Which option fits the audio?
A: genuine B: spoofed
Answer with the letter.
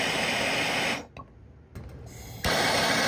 A